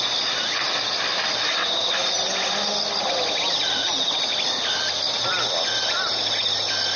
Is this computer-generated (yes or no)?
no